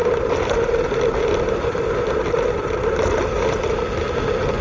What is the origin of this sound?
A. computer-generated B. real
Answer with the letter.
B